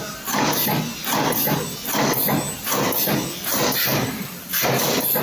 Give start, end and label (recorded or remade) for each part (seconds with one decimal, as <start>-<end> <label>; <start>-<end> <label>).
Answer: 0.0-3.9 recorded; 3.9-5.2 remade